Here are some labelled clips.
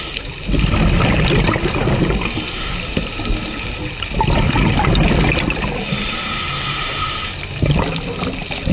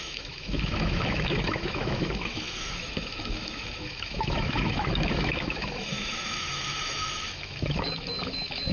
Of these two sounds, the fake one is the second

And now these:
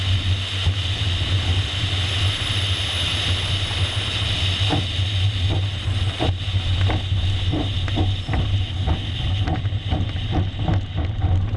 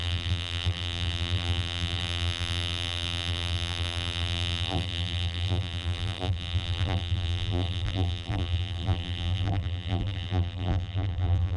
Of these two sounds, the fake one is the second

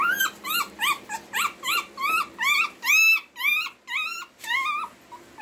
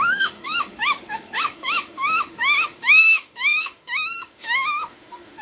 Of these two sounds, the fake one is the second